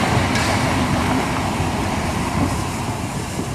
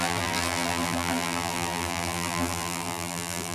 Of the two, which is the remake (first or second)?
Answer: second